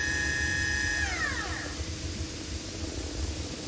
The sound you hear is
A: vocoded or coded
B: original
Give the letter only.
B